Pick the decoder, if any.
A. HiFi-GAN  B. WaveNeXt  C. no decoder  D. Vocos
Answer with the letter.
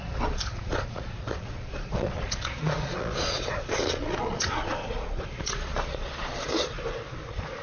D